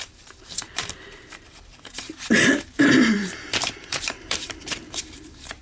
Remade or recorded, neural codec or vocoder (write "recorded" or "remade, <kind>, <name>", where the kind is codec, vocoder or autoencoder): remade, vocoder, BigVGAN v2